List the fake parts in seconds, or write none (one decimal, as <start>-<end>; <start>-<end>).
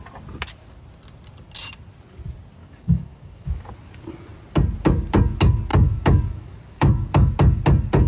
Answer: 2.6-3.6; 5.7-7.3